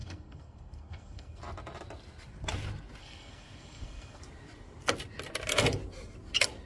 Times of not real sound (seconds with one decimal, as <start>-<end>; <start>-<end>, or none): 0.0-1.4; 3.0-4.2